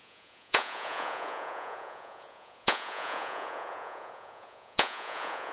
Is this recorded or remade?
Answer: remade